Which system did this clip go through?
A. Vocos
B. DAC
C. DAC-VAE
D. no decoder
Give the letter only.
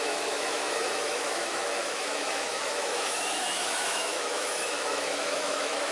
C